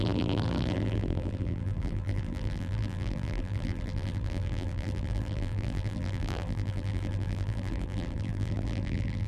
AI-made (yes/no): yes